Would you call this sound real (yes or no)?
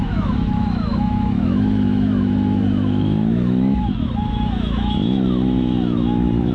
no